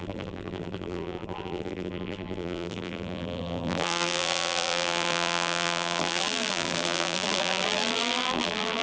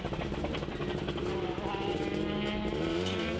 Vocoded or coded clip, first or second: first